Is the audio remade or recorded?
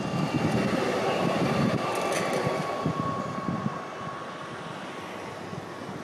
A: recorded